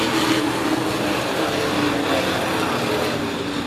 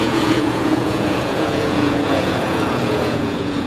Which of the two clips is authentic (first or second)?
first